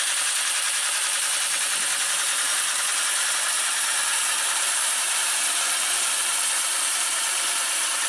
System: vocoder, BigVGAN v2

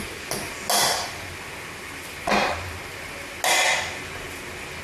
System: none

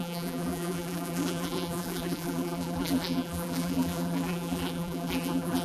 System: vocoder, BigVGAN v2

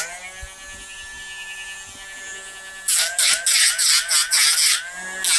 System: none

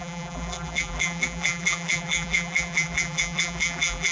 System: vocoder, BigVGAN v2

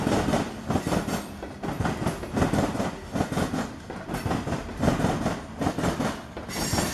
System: none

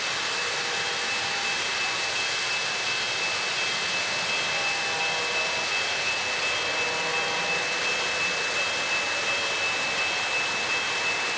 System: none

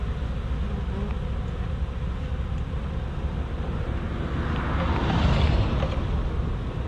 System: none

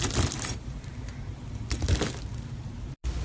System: none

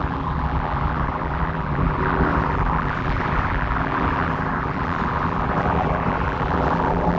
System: vocoder, BigVGAN v2